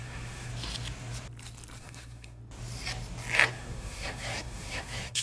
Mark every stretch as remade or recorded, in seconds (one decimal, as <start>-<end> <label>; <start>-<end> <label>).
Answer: 0.0-0.5 remade; 0.5-1.8 recorded; 1.8-2.4 remade; 2.4-3.5 recorded; 3.5-5.2 remade